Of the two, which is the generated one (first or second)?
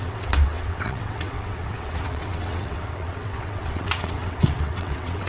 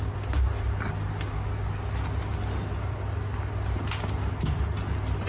first